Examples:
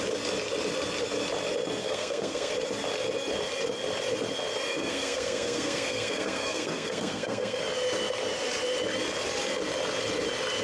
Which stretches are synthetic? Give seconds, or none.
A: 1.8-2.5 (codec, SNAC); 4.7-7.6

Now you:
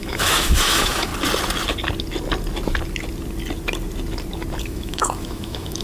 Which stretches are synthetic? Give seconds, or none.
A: 0.0-1.1 (autoencoder, DAC-VAE); 4.6-5.8